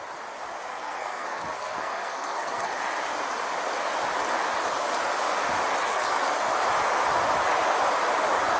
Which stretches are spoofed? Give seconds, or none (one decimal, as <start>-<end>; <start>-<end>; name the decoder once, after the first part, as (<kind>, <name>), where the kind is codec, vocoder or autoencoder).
0.7-2.8 (codec, SNAC); 5.8-6.3